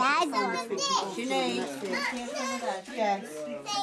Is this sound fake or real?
real